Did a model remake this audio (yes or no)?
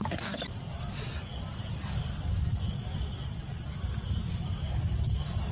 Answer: no